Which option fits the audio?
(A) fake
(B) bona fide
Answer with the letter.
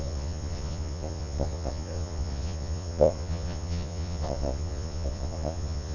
A